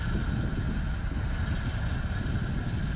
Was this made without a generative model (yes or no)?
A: yes